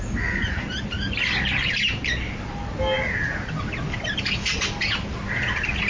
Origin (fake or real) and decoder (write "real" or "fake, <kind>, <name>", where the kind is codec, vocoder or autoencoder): real